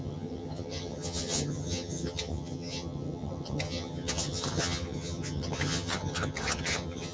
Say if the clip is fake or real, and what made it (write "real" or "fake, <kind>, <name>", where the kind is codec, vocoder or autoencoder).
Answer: fake, vocoder, HiFi-GAN